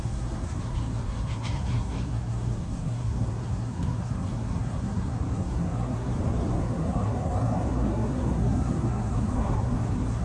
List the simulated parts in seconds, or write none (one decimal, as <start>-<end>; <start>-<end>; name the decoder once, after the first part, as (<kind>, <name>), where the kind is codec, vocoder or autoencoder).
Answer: 0.0-6.1 (codec, SNAC); 6.6-10.2